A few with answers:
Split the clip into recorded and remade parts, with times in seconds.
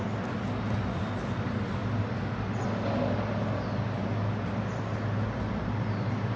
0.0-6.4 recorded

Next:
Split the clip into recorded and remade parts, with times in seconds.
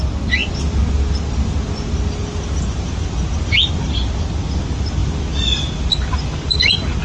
0.0-7.0 recorded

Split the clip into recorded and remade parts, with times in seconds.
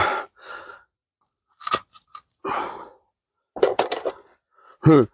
0.0-1.0 recorded; 1.0-4.1 remade; 4.1-5.1 recorded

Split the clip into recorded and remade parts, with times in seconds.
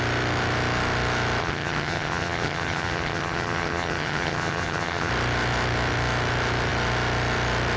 0.0-1.4 recorded; 1.4-5.1 remade; 5.1-7.8 recorded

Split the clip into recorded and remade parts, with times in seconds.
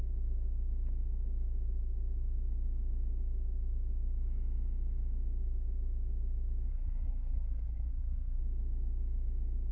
0.0-6.7 recorded; 6.7-8.4 remade; 8.4-9.7 recorded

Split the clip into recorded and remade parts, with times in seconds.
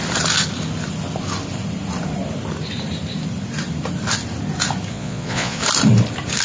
0.0-4.9 recorded; 4.9-5.6 remade; 5.6-6.4 recorded